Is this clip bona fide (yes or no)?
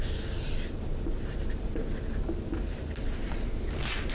yes